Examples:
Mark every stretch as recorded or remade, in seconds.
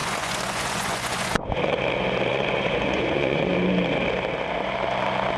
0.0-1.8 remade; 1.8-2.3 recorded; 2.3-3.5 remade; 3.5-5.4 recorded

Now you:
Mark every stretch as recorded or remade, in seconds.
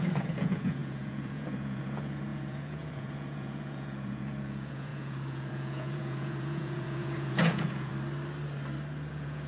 0.0-7.9 remade; 7.9-9.1 recorded; 9.1-9.5 remade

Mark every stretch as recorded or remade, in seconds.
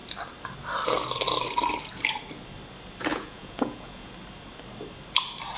0.0-3.1 recorded; 3.1-4.1 remade; 4.1-5.6 recorded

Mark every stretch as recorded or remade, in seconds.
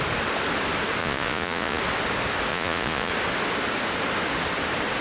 0.0-1.0 recorded; 1.0-1.8 remade; 1.8-2.5 recorded; 2.5-3.1 remade; 3.1-5.0 recorded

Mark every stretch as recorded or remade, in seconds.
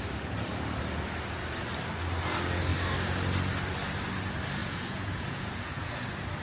0.0-4.6 recorded; 4.6-5.9 remade; 5.9-6.4 recorded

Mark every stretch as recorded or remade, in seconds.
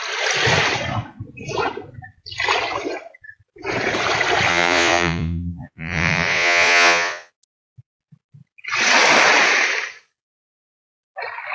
0.0-4.5 recorded; 4.5-7.3 remade; 7.3-11.5 recorded